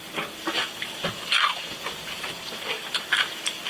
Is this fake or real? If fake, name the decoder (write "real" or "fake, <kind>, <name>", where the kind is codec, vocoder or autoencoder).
real